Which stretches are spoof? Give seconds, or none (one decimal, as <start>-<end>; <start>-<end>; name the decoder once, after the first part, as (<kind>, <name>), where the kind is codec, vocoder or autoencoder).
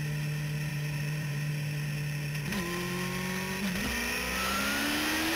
0.7-1.5 (vocoder, BigVGAN v2)